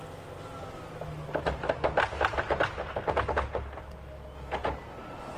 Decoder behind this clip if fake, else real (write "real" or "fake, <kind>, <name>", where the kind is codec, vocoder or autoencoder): real